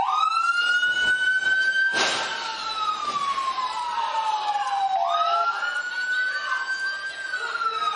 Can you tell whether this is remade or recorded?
recorded